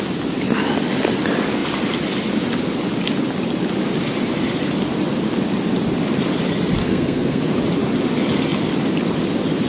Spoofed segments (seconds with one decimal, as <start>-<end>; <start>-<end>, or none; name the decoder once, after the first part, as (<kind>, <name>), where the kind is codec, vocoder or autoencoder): 6.8-7.4 (codec, SNAC)